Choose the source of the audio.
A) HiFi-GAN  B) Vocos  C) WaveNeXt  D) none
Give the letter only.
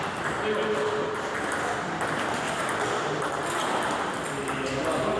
D